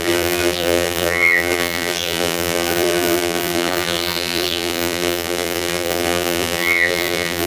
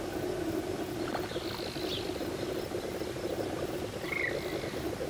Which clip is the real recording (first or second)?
second